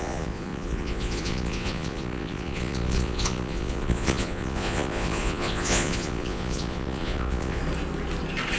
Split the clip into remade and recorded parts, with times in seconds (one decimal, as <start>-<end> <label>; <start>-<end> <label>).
0.0-7.6 remade; 7.6-8.6 recorded